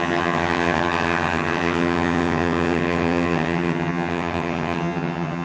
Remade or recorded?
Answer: remade